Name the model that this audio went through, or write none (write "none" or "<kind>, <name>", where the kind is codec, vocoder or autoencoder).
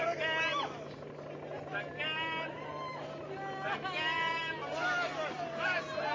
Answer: none